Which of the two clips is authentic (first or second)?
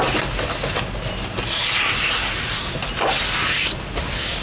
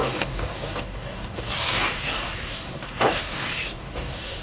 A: first